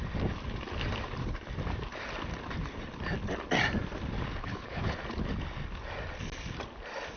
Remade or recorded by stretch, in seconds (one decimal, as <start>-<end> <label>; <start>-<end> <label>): 0.0-4.4 recorded; 4.4-5.0 remade; 5.0-7.2 recorded